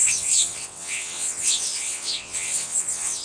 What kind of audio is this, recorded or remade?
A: remade